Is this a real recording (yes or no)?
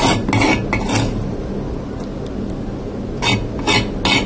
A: yes